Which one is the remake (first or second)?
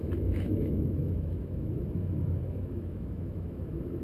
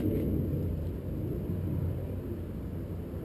first